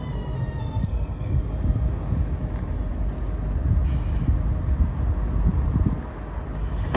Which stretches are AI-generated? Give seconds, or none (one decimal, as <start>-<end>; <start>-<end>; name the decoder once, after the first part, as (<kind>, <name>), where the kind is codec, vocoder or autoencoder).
0.8-1.4 (codec, SNAC)